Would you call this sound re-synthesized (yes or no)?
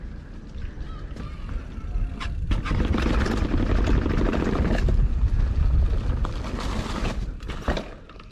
no